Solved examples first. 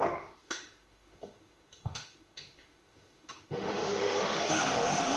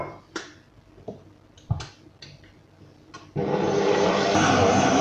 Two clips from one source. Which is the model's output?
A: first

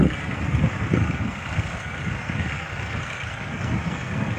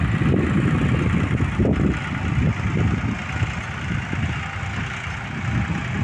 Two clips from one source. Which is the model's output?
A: first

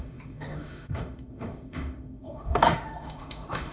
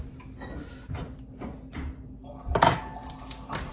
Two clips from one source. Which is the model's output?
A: first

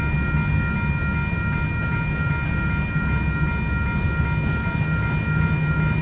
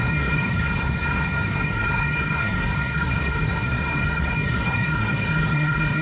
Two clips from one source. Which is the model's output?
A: second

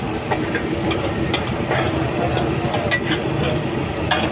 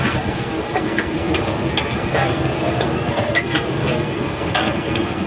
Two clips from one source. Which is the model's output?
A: second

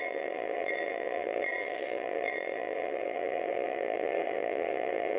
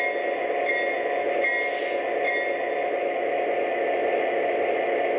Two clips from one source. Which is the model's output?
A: first